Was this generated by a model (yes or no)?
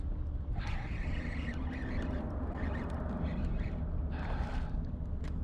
no